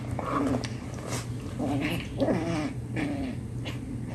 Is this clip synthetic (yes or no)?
no